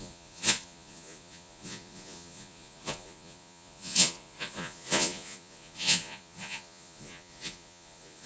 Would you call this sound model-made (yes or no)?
yes